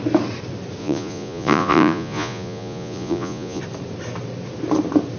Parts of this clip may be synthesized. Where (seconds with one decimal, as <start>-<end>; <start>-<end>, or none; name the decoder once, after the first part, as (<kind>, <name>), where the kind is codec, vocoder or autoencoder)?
0.8-3.6 (vocoder, Vocos)